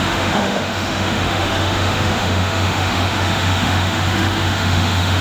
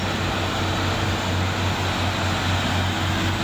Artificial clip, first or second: first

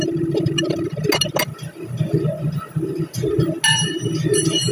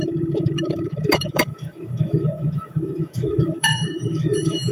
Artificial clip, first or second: second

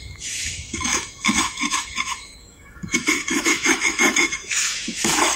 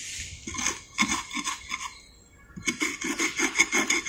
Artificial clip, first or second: first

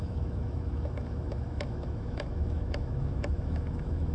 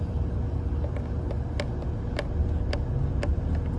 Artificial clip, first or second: first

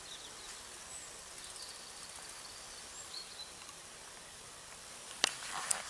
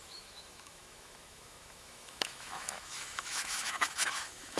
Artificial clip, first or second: second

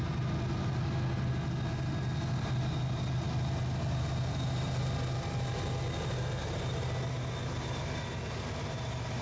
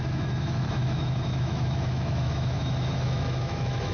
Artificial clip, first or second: second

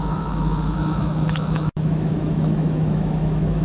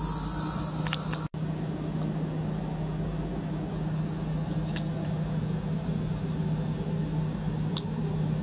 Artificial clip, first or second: first